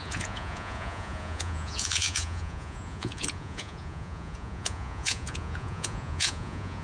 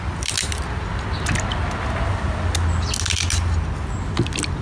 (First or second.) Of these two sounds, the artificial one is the first